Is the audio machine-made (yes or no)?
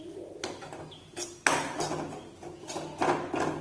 no